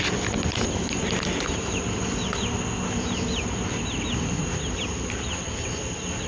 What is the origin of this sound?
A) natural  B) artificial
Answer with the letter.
A